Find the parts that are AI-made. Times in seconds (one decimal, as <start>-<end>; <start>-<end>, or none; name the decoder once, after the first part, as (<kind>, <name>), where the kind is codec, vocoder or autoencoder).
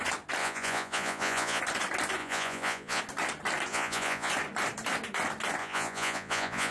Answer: 0.4-1.6 (vocoder, Vocos); 2.2-3.0; 3.7-4.3; 5.6-6.7